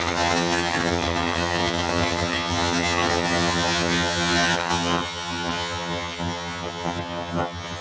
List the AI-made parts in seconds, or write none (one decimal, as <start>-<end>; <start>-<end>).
0.0-7.8